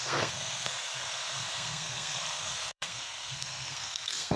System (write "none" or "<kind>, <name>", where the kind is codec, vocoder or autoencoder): codec, SNAC